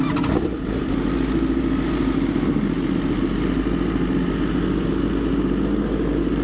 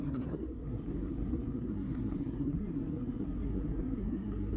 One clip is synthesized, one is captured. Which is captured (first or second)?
first